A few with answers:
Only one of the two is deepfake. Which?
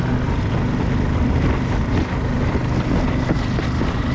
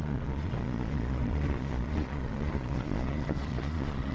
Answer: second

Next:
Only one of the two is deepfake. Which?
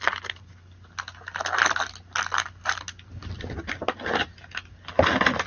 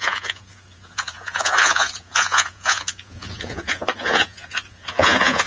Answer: second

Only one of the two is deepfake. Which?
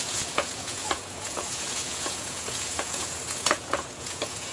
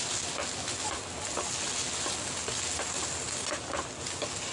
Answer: first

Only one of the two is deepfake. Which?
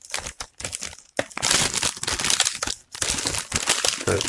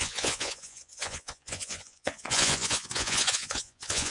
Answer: second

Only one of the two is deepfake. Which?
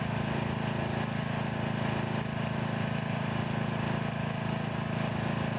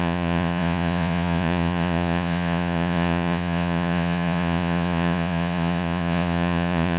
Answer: second